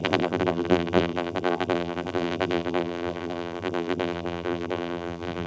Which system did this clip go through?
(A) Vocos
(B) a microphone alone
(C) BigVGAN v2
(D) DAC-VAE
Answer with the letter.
C